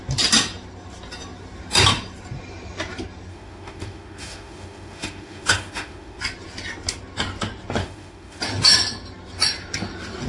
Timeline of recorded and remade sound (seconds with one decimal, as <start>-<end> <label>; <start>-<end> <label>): 0.0-3.3 recorded; 3.3-6.2 remade; 6.2-7.8 recorded; 7.8-8.4 remade; 8.4-10.3 recorded